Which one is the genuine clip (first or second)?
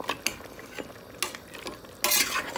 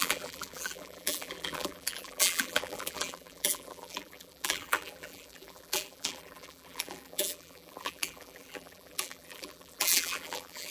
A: first